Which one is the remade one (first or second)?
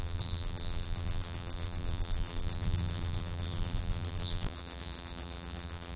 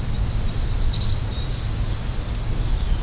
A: first